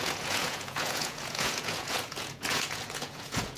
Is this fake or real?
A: fake